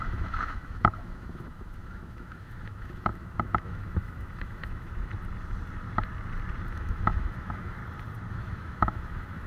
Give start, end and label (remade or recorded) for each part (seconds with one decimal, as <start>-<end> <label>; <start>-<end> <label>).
0.0-5.1 remade; 5.1-6.7 recorded; 6.7-7.8 remade; 7.8-8.3 recorded; 8.3-9.5 remade